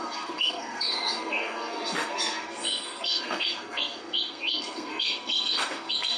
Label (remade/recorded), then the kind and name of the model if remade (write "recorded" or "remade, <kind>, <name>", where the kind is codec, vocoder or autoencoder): remade, codec, SNAC